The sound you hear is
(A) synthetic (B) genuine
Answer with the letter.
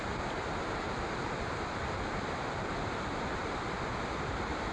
B